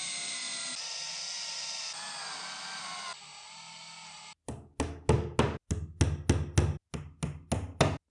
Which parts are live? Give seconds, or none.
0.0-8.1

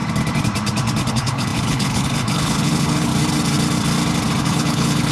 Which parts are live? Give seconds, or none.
0.0-1.1; 3.1-4.4

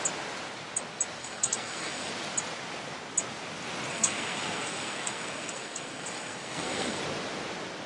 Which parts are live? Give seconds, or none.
0.0-1.2; 2.1-3.9; 7.0-7.9

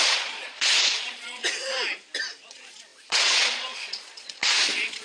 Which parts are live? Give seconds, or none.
1.4-2.4

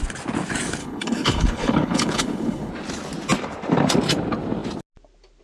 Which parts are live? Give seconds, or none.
0.0-0.8; 2.7-5.4